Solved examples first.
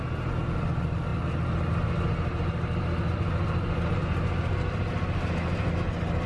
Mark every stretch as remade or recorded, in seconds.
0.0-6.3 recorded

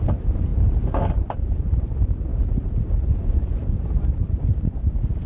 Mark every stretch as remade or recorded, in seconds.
0.0-0.5 remade; 0.5-1.3 recorded; 1.3-5.3 remade